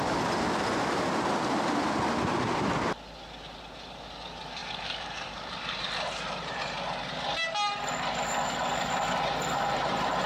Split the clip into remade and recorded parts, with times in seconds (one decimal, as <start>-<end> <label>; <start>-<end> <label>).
0.0-4.6 recorded; 4.6-6.6 remade; 6.6-10.3 recorded